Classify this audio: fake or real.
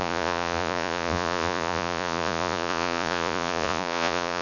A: fake